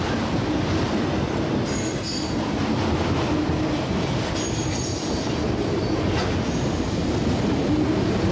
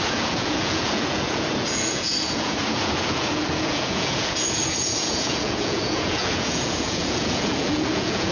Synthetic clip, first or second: second